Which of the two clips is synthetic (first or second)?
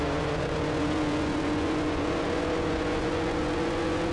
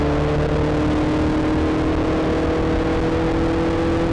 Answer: first